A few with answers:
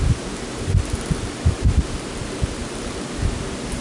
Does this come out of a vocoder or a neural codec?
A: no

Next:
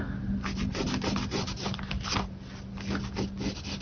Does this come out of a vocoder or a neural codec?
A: no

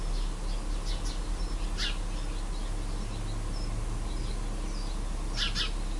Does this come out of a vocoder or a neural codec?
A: no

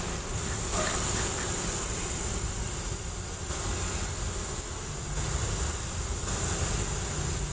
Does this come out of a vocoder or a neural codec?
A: yes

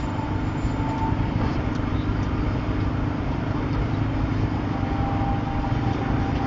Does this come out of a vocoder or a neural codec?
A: no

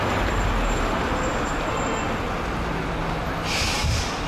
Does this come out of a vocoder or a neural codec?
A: no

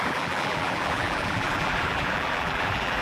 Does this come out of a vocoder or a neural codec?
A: yes